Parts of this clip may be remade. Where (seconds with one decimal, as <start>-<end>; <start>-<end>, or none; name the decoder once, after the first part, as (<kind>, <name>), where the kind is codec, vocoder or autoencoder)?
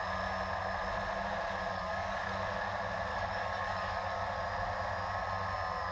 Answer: 1.7-2.3 (codec, DAC); 3.1-4.3